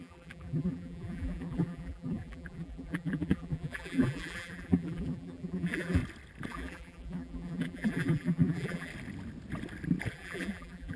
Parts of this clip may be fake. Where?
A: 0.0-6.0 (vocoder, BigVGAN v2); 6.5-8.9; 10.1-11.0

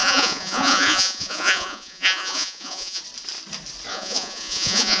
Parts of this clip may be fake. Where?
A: 0.0-3.0 (vocoder, Vocos); 3.9-5.0

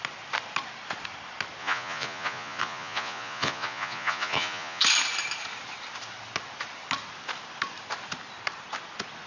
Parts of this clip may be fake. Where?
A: 1.6-4.8 (vocoder, Vocos)

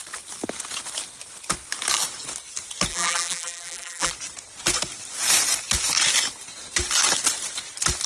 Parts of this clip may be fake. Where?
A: 2.9-4.1 (vocoder, BigVGAN v2)

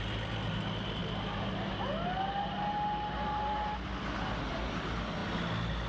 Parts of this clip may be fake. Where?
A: none

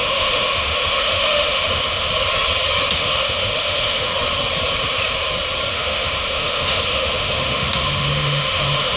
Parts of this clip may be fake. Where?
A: 0.0-2.1 (autoencoder, DAC-VAE); 2.9-4.1; 5.7-9.0

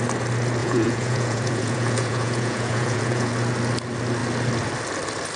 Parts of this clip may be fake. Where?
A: 0.6-3.3 (vocoder, Vocos)